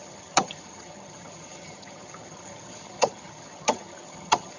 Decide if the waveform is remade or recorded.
remade